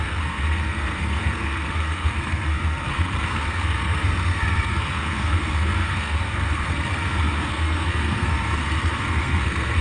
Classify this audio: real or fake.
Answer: fake